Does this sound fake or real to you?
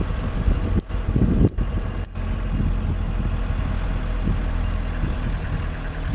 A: real